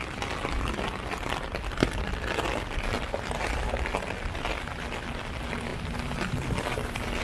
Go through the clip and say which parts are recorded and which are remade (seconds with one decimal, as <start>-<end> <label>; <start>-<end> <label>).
0.0-7.2 recorded